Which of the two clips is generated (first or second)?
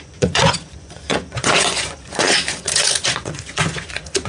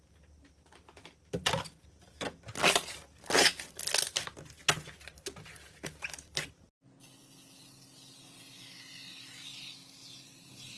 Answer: first